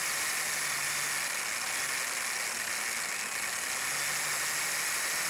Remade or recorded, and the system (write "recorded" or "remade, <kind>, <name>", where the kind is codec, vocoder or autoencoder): recorded